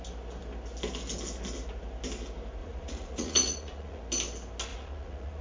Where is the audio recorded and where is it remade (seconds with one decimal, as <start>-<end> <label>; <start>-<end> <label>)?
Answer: 0.0-2.6 recorded; 2.6-4.0 remade; 4.0-4.7 recorded; 4.7-5.4 remade